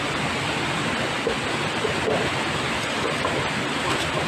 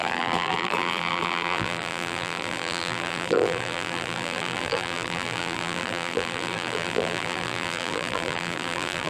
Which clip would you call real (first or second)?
first